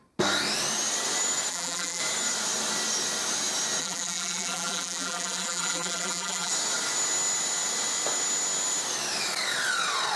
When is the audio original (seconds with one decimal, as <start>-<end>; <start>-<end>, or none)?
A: 0.0-1.5; 2.0-3.8; 6.5-10.2